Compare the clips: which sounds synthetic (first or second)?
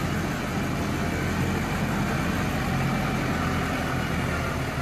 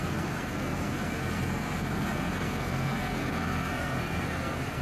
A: second